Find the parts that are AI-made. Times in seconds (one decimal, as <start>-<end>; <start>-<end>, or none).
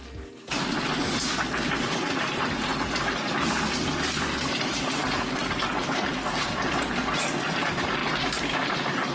0.0-9.1